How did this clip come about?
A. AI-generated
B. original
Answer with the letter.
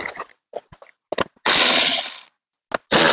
B